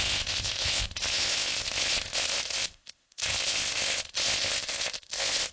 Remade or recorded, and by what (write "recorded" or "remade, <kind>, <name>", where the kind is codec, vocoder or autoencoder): remade, codec, ZipCodec